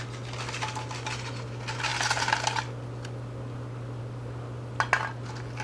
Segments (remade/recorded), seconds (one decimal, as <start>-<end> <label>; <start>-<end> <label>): 0.0-5.6 recorded